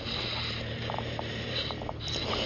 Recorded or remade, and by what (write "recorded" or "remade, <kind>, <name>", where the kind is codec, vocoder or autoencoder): remade, vocoder, BigVGAN v2